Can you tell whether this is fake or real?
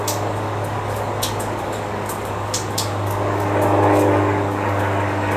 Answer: fake